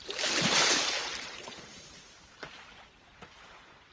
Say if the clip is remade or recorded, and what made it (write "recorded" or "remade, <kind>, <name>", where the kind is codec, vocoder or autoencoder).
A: remade, vocoder, BigVGAN v2